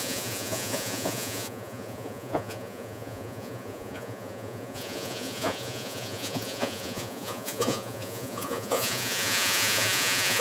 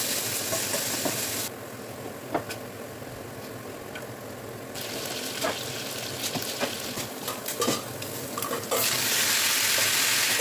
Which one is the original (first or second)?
second